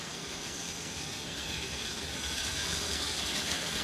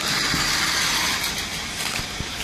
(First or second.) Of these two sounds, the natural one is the second